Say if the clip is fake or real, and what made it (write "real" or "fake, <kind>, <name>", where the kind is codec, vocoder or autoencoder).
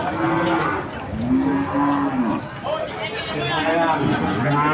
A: real